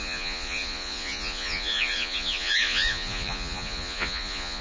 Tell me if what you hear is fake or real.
fake